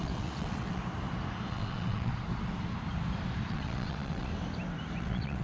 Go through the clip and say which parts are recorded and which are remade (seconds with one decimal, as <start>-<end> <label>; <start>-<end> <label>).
0.0-0.8 remade; 0.8-1.5 recorded; 1.5-2.1 remade; 2.1-3.5 recorded; 3.5-4.3 remade; 4.3-5.0 recorded; 5.0-5.4 remade